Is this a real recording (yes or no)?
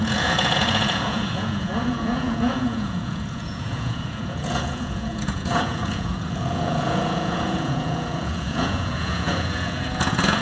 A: no